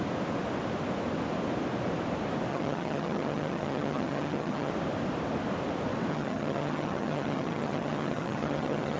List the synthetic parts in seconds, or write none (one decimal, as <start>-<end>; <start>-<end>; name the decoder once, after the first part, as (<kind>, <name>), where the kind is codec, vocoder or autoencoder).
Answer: 2.5-4.7 (vocoder, HiFi-GAN); 6.1-9.0